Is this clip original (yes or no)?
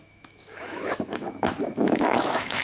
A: no